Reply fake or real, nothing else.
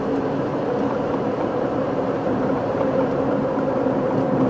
fake